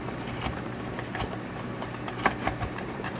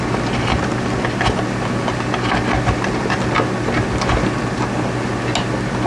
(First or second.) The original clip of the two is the second